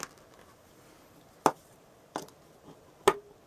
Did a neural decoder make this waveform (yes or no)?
no